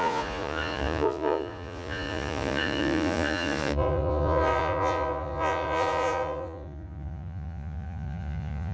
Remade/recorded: remade